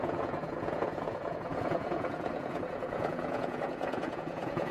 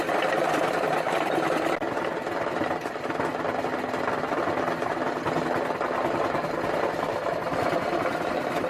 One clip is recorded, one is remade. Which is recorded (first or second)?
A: second